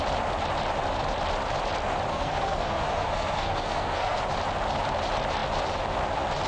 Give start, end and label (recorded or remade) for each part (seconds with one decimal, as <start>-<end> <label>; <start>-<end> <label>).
0.0-2.1 recorded; 2.1-4.2 remade; 4.2-6.5 recorded